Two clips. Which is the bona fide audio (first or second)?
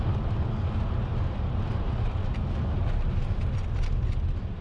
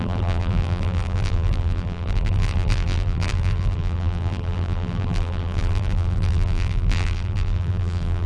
first